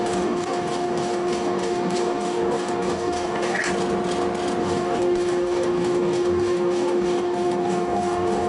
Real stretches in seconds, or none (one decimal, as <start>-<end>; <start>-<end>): 3.6-4.6